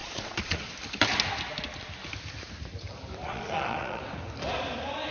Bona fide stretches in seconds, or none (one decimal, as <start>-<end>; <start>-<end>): 0.7-3.2; 4.0-5.1